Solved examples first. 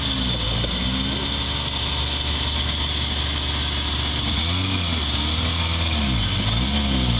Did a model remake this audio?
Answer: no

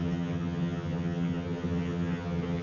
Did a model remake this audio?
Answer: yes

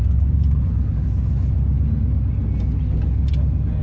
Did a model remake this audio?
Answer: no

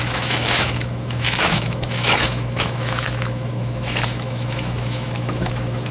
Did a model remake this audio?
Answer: yes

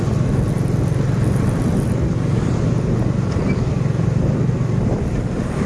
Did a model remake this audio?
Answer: no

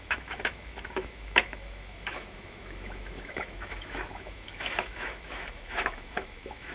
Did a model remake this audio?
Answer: yes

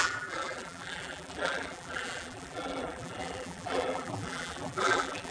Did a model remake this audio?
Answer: yes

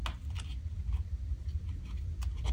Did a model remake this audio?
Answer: no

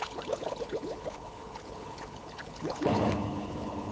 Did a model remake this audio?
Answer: yes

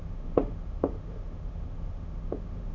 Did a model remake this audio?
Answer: yes